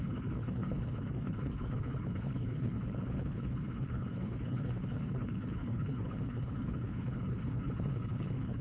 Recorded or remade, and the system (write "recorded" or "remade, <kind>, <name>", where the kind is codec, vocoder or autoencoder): remade, codec, HILCodec